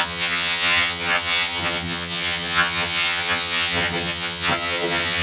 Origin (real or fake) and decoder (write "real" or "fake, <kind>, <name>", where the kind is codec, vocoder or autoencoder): fake, vocoder, HiFi-GAN